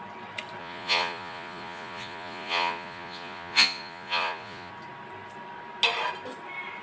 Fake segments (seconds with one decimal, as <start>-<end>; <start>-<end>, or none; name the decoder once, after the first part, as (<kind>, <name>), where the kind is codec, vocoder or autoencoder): 0.6-4.7 (vocoder, Vocos)